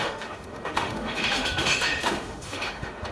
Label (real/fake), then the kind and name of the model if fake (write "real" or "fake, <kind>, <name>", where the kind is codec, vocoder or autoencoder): fake, autoencoder, DAC-VAE